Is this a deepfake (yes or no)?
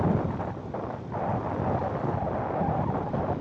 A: no